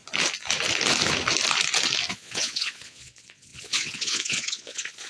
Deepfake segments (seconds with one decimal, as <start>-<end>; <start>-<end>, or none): 2.1-5.1